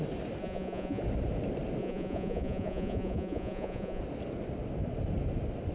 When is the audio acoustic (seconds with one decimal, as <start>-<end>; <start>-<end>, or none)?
0.0-0.4; 1.0-1.8; 4.0-5.7